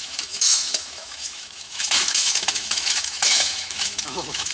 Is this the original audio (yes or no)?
no